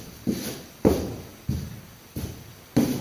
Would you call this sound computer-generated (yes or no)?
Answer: no